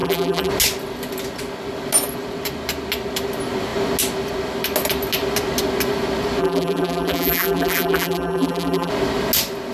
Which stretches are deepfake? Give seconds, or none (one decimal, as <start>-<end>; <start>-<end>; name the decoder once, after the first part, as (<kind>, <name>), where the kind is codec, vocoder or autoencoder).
0.0-0.5 (vocoder, BigVGAN v2); 6.4-8.9